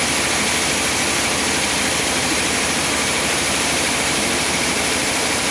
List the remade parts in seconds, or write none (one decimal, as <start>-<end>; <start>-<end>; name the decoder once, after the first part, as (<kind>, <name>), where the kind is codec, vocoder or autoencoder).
2.0-5.5 (vocoder, BigVGAN v2)